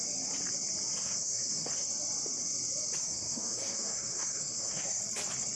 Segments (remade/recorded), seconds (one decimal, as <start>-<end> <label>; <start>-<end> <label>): 0.0-1.0 recorded; 1.0-1.7 remade; 1.7-3.0 recorded; 3.0-5.0 remade; 5.0-5.5 recorded